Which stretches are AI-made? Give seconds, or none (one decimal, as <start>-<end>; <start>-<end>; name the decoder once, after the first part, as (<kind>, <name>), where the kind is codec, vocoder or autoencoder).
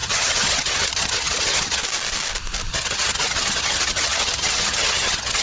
0.0-1.8 (vocoder, HiFi-GAN); 2.7-5.4